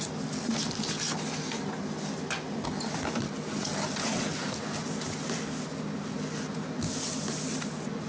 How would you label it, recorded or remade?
recorded